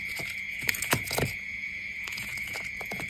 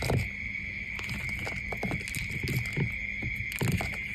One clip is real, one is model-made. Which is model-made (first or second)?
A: first